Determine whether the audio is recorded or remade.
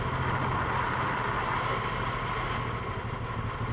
recorded